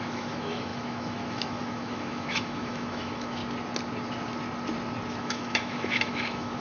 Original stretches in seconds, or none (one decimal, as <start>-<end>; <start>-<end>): 3.4-5.1